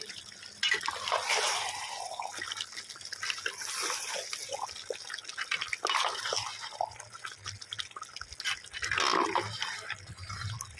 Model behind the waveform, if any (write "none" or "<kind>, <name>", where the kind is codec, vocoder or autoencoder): none